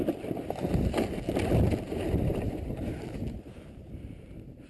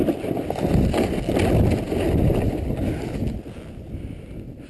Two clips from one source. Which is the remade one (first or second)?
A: first